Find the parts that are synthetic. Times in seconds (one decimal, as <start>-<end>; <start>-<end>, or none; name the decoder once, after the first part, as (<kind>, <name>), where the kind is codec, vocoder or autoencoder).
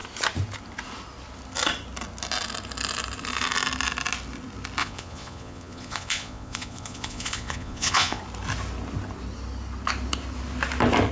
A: 4.8-8.2 (vocoder, Vocos)